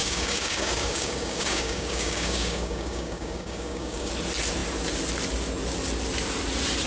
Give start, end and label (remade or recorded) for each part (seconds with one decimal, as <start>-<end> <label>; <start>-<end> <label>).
0.0-4.1 remade; 4.1-6.9 recorded